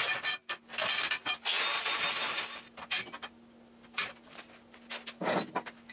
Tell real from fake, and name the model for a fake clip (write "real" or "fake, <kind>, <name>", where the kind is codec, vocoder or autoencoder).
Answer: real